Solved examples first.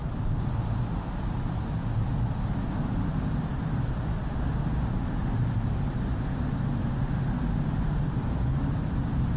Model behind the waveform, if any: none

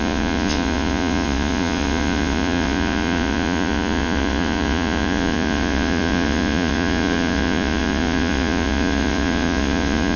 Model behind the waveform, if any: vocoder, Vocos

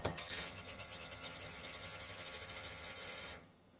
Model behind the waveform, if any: vocoder, HiFi-GAN